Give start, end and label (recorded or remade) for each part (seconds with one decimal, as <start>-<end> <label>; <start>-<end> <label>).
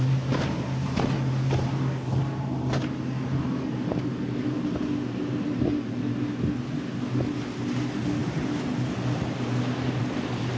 0.0-10.6 recorded